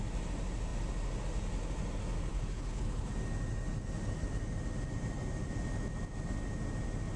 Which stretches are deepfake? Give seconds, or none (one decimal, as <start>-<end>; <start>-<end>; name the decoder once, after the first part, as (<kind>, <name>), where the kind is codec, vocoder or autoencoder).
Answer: 2.3-3.1 (codec, HILCodec)